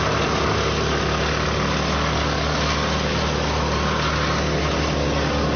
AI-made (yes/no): no